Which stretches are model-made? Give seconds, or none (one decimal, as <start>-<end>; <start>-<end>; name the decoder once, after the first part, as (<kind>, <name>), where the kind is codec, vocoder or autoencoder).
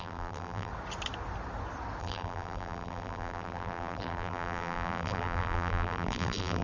0.0-0.7 (vocoder, BigVGAN v2); 2.0-6.6